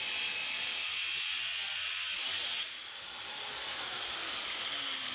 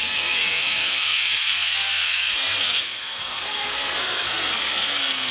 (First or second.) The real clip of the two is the first